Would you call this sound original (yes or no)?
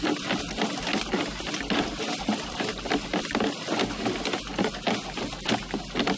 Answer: yes